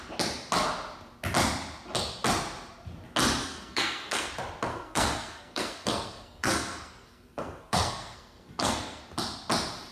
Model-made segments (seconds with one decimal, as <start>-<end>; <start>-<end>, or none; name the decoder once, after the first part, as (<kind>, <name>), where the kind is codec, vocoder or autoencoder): 3.4-4.3 (codec, SNAC); 4.7-9.0